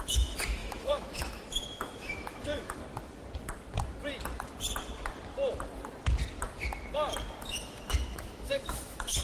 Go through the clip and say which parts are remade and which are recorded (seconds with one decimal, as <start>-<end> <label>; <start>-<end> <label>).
0.0-2.8 remade; 2.8-7.4 recorded; 7.4-9.2 remade